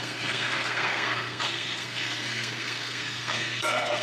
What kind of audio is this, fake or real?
fake